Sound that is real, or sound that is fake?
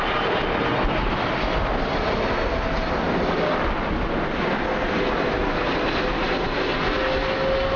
real